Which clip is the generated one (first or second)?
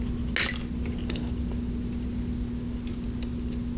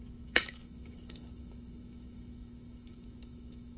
second